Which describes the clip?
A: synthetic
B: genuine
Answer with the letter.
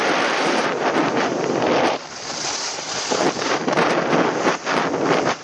A